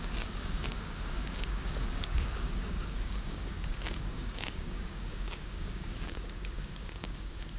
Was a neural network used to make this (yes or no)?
yes